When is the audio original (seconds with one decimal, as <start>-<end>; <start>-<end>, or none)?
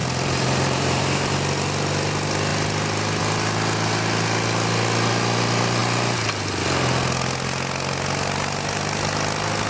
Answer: 1.3-9.7